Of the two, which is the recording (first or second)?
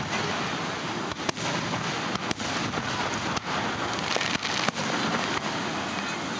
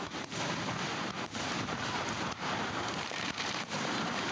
first